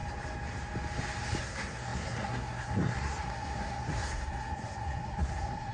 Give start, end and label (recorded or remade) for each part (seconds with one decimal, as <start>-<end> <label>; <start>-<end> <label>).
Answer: 0.0-1.4 recorded; 1.4-5.7 remade